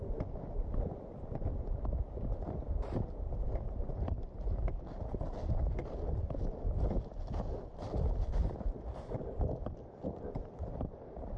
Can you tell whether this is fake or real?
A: real